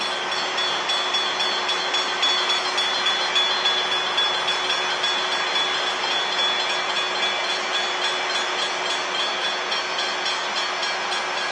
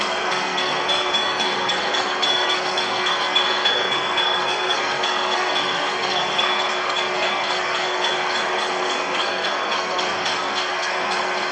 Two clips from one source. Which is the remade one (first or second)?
second